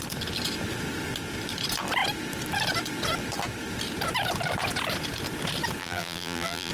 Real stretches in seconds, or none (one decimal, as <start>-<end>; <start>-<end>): 0.0-5.8